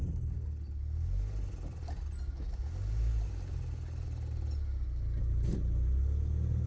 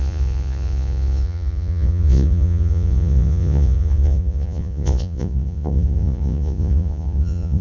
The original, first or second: first